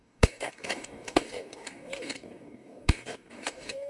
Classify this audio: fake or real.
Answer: fake